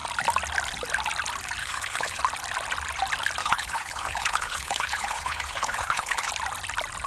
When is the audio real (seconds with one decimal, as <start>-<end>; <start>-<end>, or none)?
0.0-1.6; 2.2-3.4; 6.3-7.1